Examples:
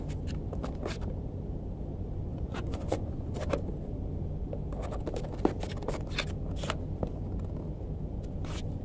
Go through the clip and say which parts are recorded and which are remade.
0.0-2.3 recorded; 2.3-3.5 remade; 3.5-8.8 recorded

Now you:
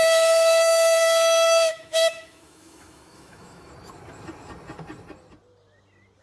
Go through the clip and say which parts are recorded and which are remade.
0.0-3.7 remade; 3.7-6.2 recorded

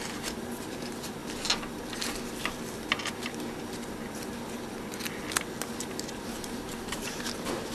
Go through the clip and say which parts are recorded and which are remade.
0.0-1.2 remade; 1.2-5.8 recorded; 5.8-7.7 remade

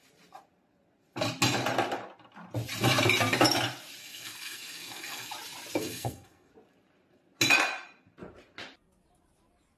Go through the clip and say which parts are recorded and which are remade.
0.0-4.0 recorded; 4.0-5.3 remade; 5.3-5.8 recorded; 5.8-6.5 remade; 6.5-9.8 recorded

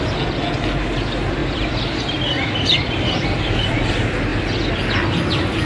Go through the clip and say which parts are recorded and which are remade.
0.0-1.4 recorded; 1.4-3.7 remade; 3.7-5.7 recorded